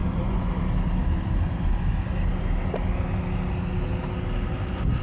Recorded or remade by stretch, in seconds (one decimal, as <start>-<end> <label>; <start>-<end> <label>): 0.0-0.5 remade; 0.5-5.0 recorded